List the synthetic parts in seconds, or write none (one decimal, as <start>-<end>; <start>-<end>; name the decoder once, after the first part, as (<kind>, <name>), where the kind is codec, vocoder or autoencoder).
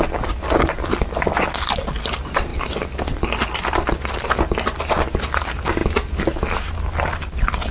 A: none